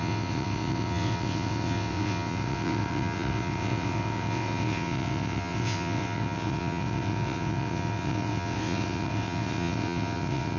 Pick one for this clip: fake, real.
fake